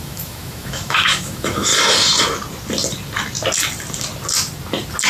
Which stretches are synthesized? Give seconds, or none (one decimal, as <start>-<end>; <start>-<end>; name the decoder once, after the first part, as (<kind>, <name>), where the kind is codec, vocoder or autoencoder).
0.0-1.7 (autoencoder, DAC-VAE)